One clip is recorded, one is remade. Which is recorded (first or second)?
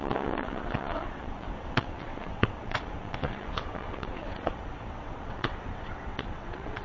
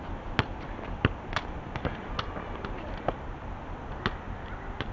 second